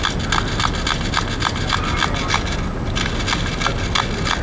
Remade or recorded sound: recorded